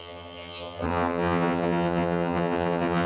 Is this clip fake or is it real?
fake